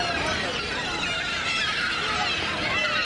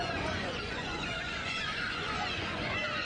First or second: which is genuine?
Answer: first